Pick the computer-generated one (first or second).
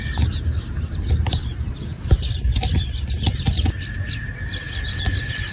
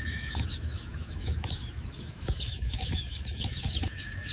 second